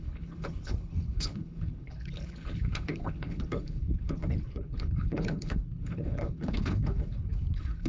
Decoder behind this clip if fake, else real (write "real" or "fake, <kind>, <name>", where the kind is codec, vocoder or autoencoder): fake, codec, HILCodec